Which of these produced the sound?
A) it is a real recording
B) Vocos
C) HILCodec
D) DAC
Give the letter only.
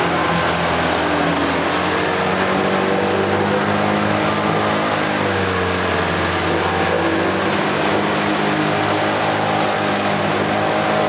A